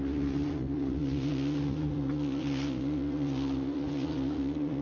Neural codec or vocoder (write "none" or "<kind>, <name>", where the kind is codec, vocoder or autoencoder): vocoder, Vocos